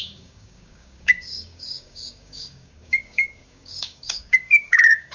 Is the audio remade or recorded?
remade